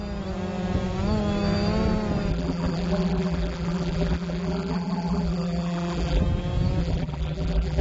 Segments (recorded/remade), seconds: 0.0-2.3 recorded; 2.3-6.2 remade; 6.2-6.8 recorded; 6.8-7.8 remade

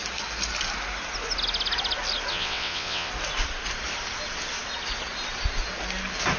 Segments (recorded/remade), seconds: 0.0-2.3 recorded; 2.3-3.1 remade; 3.1-6.4 recorded

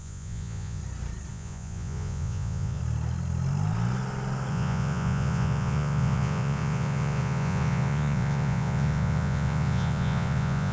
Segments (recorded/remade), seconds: 0.0-0.8 remade; 0.8-1.3 recorded; 1.3-2.8 remade; 2.8-4.5 recorded; 4.5-10.7 remade

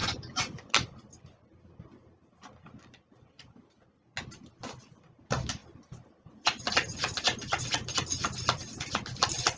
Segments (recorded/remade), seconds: 0.0-9.6 recorded

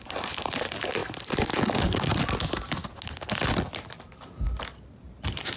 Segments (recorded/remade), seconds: 0.0-1.0 remade; 1.0-3.9 recorded; 3.9-5.6 remade